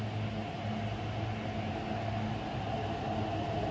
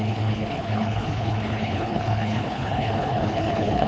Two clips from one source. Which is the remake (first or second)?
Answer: second